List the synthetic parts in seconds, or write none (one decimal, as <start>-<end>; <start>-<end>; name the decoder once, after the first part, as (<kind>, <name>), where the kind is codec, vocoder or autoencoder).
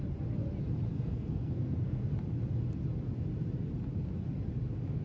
0.9-2.1 (codec, SNAC)